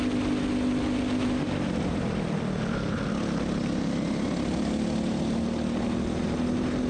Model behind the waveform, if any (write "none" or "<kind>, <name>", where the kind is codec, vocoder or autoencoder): none